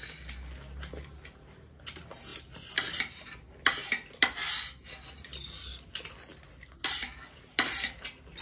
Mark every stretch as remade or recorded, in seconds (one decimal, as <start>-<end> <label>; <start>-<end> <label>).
0.0-8.4 recorded